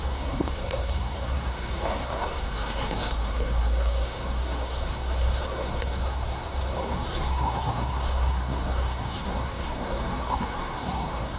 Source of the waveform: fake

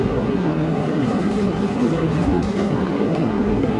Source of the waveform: fake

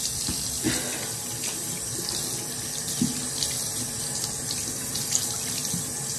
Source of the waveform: real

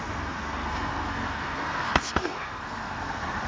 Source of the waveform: fake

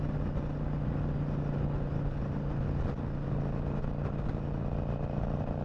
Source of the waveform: real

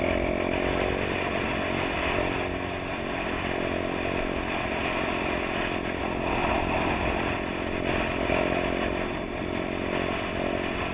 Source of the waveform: real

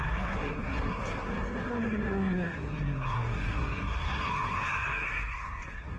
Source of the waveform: fake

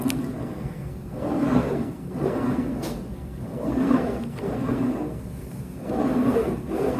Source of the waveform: fake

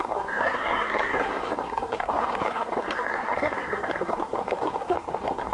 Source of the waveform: fake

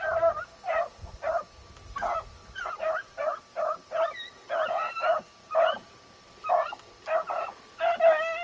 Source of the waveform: real